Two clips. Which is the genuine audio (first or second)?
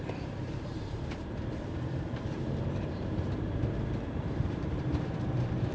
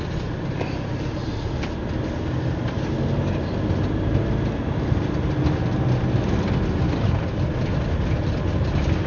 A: second